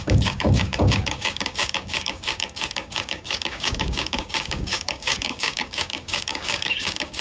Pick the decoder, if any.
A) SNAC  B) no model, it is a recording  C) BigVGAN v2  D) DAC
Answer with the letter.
D